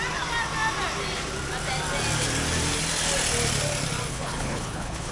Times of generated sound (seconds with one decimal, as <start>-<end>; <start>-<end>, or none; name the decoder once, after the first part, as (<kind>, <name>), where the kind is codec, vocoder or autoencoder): 4.1-5.1 (codec, HILCodec)